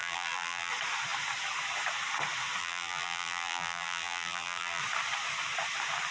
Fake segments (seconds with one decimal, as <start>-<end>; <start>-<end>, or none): 0.0-0.7; 2.6-4.8